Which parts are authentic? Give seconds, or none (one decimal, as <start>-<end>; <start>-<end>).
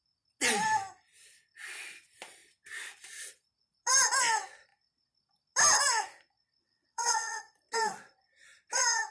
0.0-6.6; 7.4-9.1